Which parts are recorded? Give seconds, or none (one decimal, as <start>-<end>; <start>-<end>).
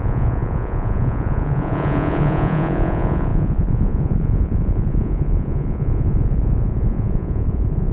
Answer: none